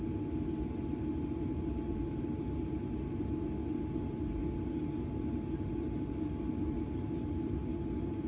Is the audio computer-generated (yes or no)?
no